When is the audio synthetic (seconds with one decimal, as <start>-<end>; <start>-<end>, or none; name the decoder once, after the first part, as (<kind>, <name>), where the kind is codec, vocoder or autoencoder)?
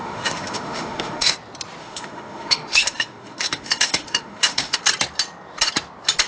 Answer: 0.0-1.3 (autoencoder, DAC-VAE); 1.8-4.8